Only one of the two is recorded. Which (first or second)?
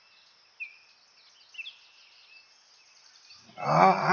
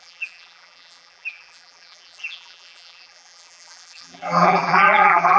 first